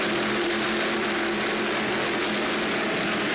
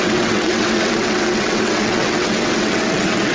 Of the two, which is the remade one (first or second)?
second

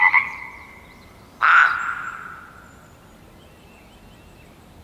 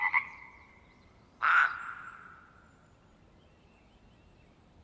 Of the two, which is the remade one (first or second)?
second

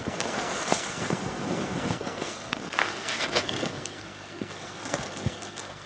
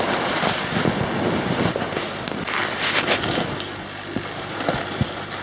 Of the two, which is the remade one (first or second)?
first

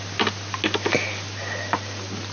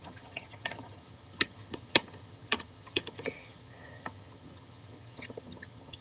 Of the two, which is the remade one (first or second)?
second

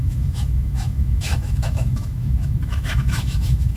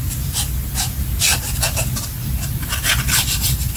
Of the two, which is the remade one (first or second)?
first